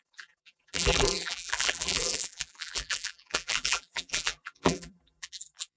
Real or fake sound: fake